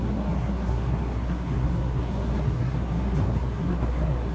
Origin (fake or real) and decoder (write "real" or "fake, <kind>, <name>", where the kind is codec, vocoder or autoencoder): fake, codec, SNAC